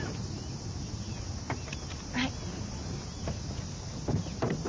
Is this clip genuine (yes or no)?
yes